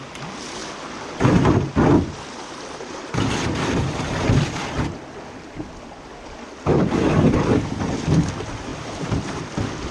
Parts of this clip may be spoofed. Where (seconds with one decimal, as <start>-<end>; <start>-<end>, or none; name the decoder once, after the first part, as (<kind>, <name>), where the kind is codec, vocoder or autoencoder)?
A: 0.0-9.9 (vocoder, BigVGAN v2)

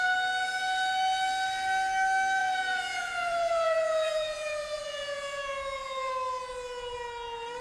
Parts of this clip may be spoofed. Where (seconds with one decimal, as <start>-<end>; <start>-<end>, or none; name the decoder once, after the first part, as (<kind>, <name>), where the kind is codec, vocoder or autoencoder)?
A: 2.4-6.1 (vocoder, Vocos)

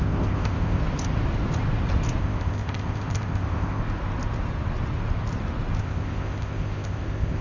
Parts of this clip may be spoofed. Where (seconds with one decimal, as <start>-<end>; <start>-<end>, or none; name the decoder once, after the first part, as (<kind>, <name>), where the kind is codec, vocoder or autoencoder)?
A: 0.0-0.8 (codec, ZipCodec); 2.2-3.8; 5.8-7.4

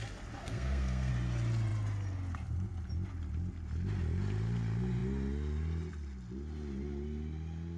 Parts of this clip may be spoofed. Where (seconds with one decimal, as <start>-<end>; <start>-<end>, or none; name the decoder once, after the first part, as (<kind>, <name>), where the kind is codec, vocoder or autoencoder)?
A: 0.4-1.1 (codec, SNAC)

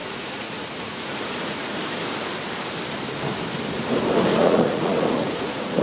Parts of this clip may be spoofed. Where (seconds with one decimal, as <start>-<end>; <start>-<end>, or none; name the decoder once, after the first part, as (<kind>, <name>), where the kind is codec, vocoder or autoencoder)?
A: 0.0-1.7 (vocoder, Vocos); 4.4-5.8

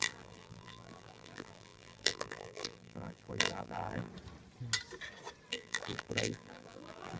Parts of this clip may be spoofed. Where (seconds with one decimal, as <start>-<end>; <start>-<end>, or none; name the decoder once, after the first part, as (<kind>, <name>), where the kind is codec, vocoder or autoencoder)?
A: 0.0-4.1 (vocoder, BigVGAN v2); 5.5-7.2

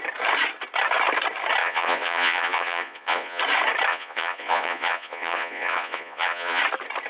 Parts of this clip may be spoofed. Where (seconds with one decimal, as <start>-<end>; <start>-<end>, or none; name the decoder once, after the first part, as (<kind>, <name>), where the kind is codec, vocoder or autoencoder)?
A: 1.6-3.4 (vocoder, Vocos); 3.9-6.6

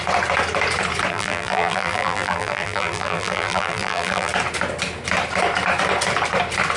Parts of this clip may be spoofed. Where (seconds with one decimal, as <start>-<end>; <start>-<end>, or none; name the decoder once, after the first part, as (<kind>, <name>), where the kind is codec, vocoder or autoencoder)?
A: 1.1-4.3 (vocoder, BigVGAN v2)